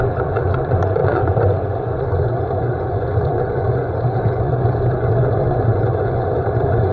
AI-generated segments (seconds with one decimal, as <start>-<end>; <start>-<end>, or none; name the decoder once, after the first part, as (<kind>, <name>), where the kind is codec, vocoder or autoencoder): 0.0-6.9 (vocoder, Vocos)